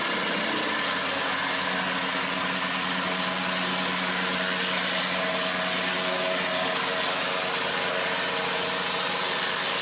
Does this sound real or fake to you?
real